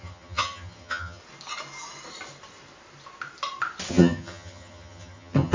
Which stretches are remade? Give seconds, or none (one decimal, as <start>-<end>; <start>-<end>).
0.0-1.2; 3.9-5.5